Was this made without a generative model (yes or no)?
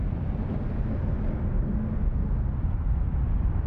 yes